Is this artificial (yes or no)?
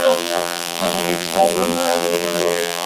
yes